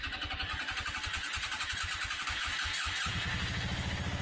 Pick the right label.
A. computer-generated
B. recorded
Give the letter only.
B